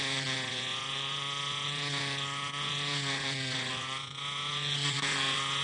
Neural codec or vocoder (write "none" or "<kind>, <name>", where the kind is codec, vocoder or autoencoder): vocoder, Vocos